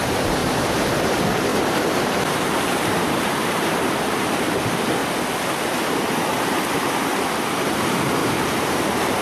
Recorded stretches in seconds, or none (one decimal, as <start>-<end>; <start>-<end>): 0.0-0.4; 1.1-1.5; 4.3-8.2